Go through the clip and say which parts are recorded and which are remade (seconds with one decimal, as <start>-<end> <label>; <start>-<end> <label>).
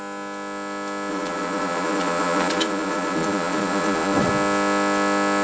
0.0-1.1 recorded; 1.1-4.3 remade; 4.3-5.4 recorded